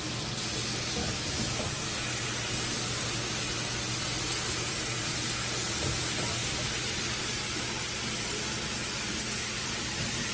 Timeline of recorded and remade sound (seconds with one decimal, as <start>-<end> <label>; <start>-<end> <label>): 0.0-1.0 recorded; 1.0-1.7 remade; 1.7-10.3 recorded

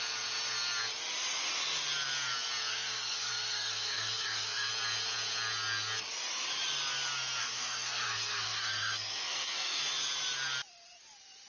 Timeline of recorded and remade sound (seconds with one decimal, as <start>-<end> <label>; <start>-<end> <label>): 0.0-2.7 recorded; 2.7-4.7 remade; 4.7-7.4 recorded; 7.4-9.9 remade; 9.9-11.5 recorded

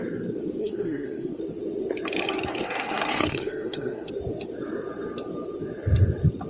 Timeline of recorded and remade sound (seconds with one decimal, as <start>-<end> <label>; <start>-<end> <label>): 0.0-0.6 recorded; 0.6-1.4 remade; 1.4-2.6 recorded; 2.6-4.1 remade; 4.1-6.5 recorded

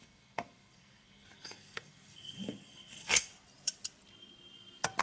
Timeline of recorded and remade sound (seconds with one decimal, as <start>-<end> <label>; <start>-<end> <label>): 0.0-3.3 remade; 3.3-5.0 recorded

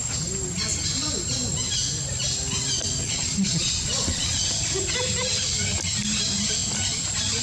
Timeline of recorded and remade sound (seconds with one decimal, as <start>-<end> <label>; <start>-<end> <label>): 0.0-3.0 recorded; 3.0-4.4 remade; 4.4-7.4 recorded

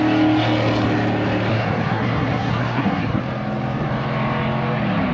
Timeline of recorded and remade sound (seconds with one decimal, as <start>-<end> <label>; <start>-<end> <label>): 0.0-1.5 recorded; 1.5-3.2 remade; 3.2-5.1 recorded